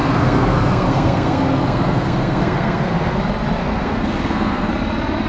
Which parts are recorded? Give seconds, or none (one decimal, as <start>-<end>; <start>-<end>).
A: 3.2-3.6; 4.7-5.3